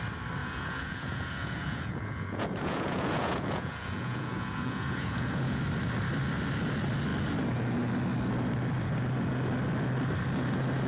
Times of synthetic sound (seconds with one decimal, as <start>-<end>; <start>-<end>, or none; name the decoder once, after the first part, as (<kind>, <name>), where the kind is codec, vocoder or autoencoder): 0.4-5.6 (vocoder, Vocos)